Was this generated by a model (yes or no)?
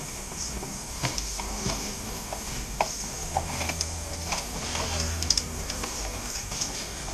yes